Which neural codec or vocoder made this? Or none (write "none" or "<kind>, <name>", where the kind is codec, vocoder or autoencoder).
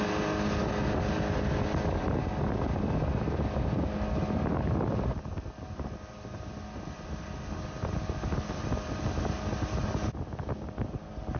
none